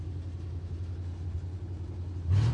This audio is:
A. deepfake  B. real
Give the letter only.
B